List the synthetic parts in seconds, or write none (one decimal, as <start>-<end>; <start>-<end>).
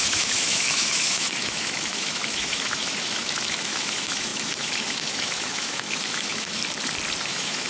0.0-6.6; 7.2-7.7